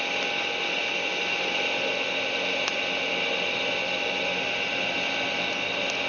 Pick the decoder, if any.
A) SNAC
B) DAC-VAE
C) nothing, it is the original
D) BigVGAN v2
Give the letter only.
C